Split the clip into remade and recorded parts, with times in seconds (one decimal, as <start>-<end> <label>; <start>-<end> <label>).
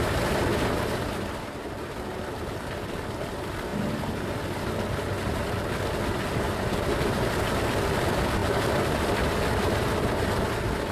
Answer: 0.0-8.4 recorded; 8.4-9.3 remade; 9.3-10.9 recorded